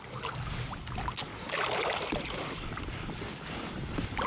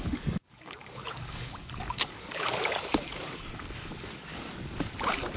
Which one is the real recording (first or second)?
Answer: first